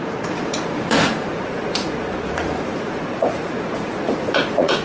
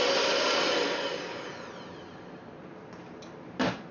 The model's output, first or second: first